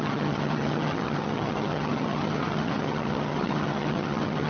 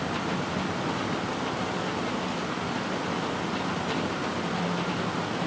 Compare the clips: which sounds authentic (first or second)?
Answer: second